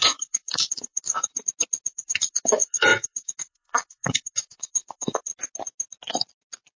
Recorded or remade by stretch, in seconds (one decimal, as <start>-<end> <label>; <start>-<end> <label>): 0.0-1.3 remade; 1.3-1.9 recorded; 1.9-5.3 remade; 5.3-6.8 recorded